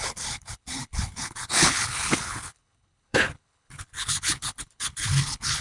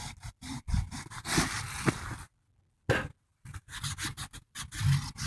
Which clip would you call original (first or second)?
second